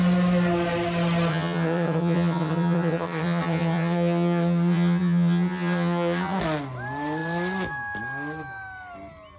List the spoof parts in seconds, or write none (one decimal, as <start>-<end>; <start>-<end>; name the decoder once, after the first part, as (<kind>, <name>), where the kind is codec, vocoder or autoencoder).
1.3-6.4 (vocoder, HiFi-GAN)